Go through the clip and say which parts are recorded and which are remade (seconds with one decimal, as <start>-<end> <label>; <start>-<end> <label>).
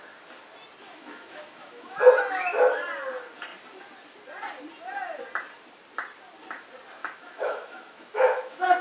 0.0-0.8 recorded; 0.8-2.0 remade; 2.0-7.0 recorded; 7.0-8.8 remade